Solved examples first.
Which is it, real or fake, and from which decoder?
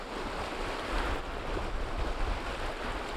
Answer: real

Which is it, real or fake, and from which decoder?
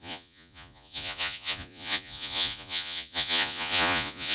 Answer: fake, vocoder, Vocos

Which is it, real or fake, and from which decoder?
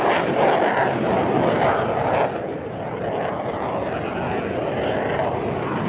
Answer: real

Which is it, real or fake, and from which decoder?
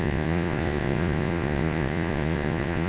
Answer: fake, vocoder, Vocos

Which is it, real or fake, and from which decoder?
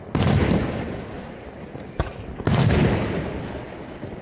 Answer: real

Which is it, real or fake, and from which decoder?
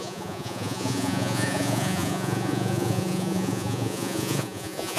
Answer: fake, vocoder, Vocos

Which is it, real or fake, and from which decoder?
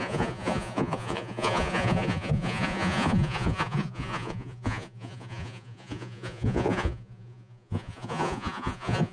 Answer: fake, vocoder, Vocos